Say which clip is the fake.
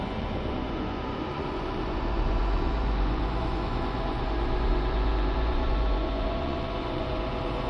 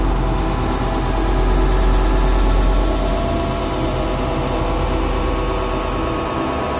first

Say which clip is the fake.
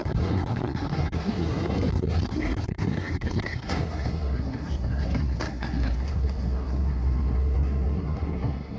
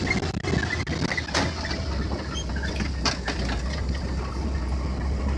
first